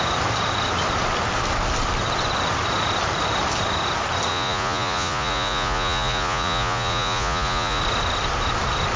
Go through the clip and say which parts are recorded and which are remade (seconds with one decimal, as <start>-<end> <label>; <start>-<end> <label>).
0.0-4.3 recorded; 4.3-7.8 remade; 7.8-9.0 recorded